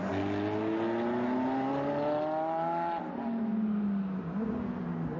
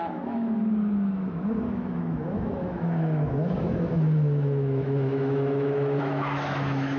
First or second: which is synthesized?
second